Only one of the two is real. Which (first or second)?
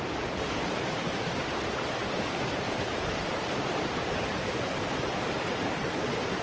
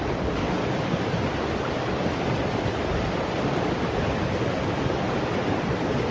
second